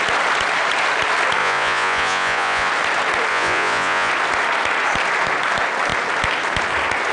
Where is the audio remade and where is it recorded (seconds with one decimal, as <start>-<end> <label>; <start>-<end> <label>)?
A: 0.0-1.4 recorded; 1.4-2.7 remade; 2.7-3.3 recorded; 3.3-4.1 remade; 4.1-7.1 recorded